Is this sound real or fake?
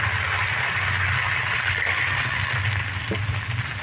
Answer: real